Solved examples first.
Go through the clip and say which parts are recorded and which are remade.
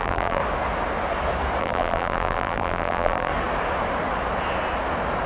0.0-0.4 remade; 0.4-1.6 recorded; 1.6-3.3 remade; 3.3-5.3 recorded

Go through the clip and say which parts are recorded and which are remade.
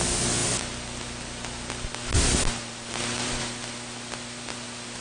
0.0-5.0 recorded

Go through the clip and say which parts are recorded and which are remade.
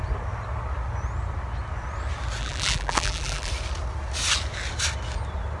0.0-2.4 recorded; 2.4-3.5 remade; 3.5-5.6 recorded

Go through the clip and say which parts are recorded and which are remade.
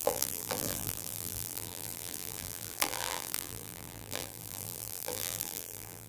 0.0-6.1 remade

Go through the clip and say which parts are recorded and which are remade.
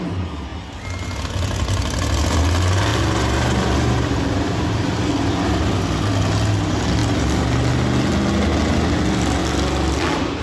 0.0-2.9 recorded; 2.9-5.1 remade; 5.1-10.4 recorded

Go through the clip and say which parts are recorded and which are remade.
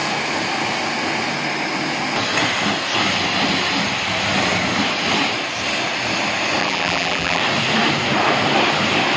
0.0-6.6 recorded; 6.6-7.4 remade; 7.4-9.2 recorded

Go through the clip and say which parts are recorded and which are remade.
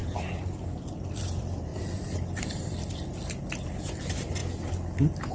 0.0-1.1 recorded; 1.1-4.4 remade; 4.4-5.3 recorded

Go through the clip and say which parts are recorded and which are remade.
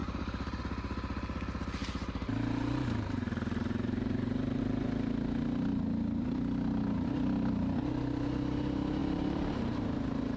0.0-0.6 remade; 0.6-1.8 recorded; 1.8-4.6 remade; 4.6-9.0 recorded; 9.0-10.4 remade